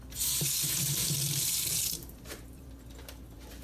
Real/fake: fake